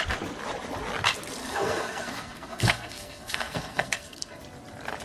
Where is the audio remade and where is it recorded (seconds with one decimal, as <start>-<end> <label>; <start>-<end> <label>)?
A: 0.0-1.4 recorded; 1.4-4.4 remade; 4.4-5.0 recorded